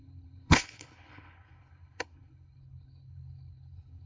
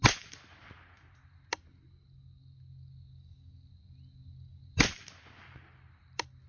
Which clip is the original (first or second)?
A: second